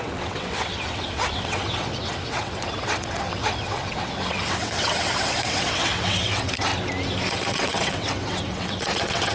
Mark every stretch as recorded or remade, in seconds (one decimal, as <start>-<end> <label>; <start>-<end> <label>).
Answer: 0.0-6.7 remade; 6.7-7.3 recorded; 7.3-9.3 remade